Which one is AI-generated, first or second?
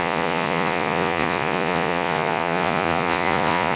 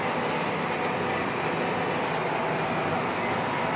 first